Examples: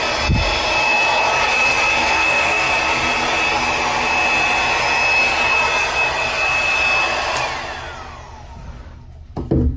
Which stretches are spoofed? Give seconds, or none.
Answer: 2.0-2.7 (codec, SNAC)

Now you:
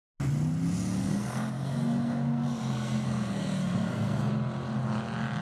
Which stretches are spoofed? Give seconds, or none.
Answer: 1.0-4.2 (codec, SNAC)

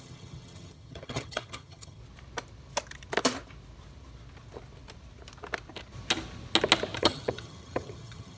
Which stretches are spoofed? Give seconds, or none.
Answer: 0.0-2.0 (vocoder, HiFi-GAN); 7.0-8.4

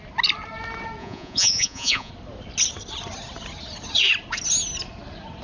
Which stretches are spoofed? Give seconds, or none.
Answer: 1.0-2.1 (vocoder, Vocos)

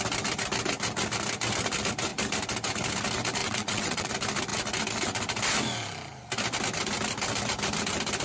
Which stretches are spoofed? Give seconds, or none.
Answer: 3.4-4.1 (vocoder, WaveNeXt)

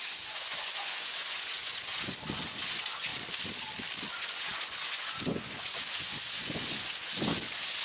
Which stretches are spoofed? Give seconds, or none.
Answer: 0.0-3.1 (vocoder, Vocos); 4.1-7.8

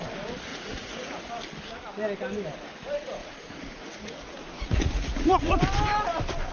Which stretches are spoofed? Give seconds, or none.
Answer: 0.5-1.3 (vocoder, Vocos); 3.2-5.6

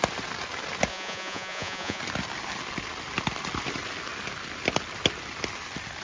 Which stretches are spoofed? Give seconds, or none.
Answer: 0.9-2.0 (vocoder, Vocos)